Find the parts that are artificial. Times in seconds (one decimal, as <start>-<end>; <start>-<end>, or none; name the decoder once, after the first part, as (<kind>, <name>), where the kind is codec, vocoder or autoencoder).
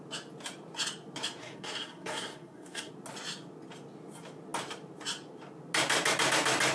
1.4-2.9 (codec, SNAC)